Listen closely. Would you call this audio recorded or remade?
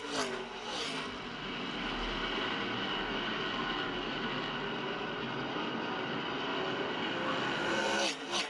recorded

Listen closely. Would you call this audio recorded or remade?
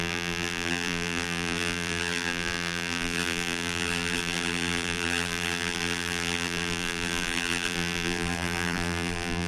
remade